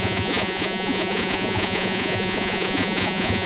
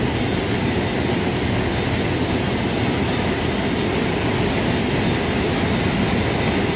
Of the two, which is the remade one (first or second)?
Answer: first